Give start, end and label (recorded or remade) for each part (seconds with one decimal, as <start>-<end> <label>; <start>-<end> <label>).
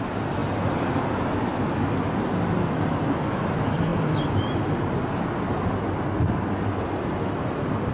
0.0-7.9 recorded